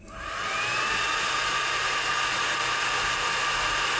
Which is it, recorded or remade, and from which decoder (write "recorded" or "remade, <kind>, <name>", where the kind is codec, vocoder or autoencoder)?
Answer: recorded